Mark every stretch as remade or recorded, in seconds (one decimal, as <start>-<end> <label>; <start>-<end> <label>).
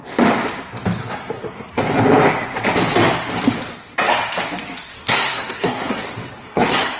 0.0-1.0 recorded; 1.0-1.8 remade; 1.8-4.9 recorded; 4.9-6.0 remade; 6.0-6.4 recorded; 6.4-7.0 remade